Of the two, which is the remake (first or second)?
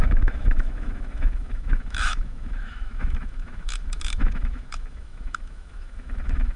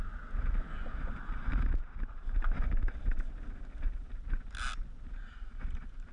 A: first